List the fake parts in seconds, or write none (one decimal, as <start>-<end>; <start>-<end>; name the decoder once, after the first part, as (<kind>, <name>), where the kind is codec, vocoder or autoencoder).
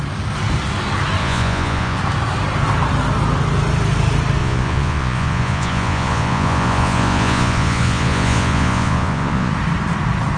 1.2-2.0 (vocoder, Vocos); 4.4-9.5